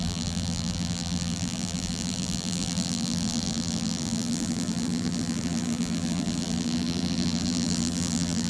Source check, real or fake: fake